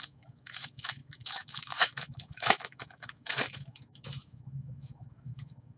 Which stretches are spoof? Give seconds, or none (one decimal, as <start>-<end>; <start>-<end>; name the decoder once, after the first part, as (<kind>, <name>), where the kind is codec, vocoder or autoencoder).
0.0-5.8 (autoencoder, DAC-VAE)